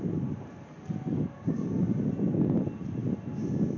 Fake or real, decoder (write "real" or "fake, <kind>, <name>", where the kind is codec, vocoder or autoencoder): real